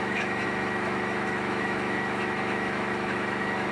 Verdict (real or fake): fake